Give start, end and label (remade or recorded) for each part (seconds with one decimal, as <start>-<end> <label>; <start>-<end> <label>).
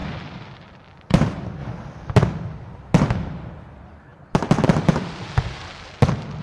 0.0-0.7 remade; 0.7-1.6 recorded; 1.6-2.1 remade; 2.1-4.1 recorded; 4.1-5.7 remade; 5.7-6.4 recorded